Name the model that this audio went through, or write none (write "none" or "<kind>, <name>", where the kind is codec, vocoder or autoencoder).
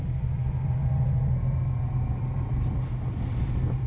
none